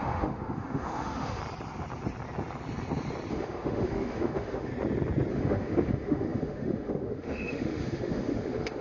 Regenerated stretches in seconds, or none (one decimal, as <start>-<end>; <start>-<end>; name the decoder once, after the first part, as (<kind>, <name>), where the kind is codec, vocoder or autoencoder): 0.0-1.4 (autoencoder, DAC-VAE); 3.3-4.7; 5.3-8.8

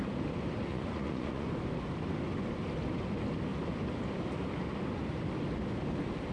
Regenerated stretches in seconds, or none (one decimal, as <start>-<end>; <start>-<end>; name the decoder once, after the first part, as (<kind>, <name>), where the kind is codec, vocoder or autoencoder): 0.7-1.5 (vocoder, Vocos)

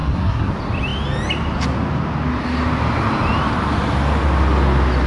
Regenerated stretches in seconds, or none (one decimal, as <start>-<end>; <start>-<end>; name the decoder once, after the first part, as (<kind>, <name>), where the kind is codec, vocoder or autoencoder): 0.0-0.5 (codec, SNAC)

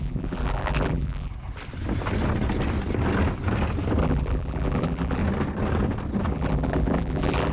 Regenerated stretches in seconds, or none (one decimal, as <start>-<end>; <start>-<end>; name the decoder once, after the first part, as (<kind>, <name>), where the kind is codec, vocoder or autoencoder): 0.0-1.3 (vocoder, BigVGAN v2); 4.0-5.2; 6.3-7.5